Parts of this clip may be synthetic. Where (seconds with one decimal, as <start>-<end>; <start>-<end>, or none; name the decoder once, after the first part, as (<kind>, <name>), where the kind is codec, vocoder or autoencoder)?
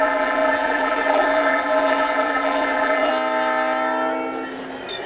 0.0-3.1 (vocoder, BigVGAN v2)